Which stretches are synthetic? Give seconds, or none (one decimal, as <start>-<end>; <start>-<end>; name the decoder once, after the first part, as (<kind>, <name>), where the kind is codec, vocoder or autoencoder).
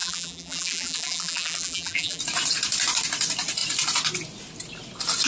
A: 0.0-2.2 (vocoder, BigVGAN v2)